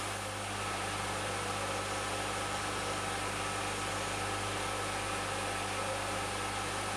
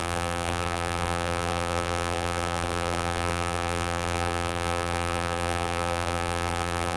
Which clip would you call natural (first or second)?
first